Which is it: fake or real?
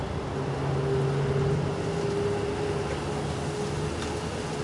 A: real